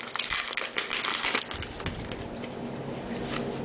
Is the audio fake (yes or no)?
no